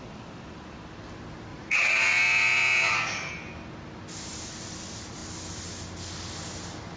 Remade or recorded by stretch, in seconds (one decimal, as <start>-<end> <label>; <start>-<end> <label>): 0.0-1.5 recorded; 1.5-3.3 remade; 3.3-7.0 recorded